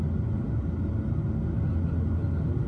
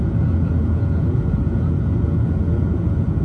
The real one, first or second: first